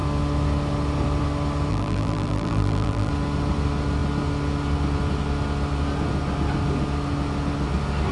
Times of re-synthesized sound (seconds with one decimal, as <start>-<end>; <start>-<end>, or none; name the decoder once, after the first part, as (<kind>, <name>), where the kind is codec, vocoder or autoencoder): 1.7-3.1 (vocoder, BigVGAN v2)